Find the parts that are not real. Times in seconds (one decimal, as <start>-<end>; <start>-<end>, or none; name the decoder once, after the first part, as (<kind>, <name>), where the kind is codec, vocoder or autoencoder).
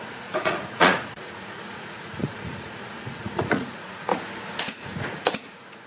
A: 0.0-4.1 (vocoder, Vocos); 4.6-5.9